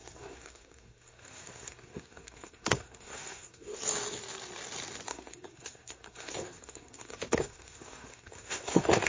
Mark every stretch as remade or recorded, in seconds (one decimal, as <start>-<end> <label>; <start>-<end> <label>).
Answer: 0.0-3.8 remade; 3.8-5.1 recorded; 5.1-9.1 remade